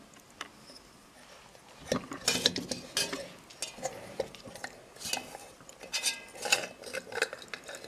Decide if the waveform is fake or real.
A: real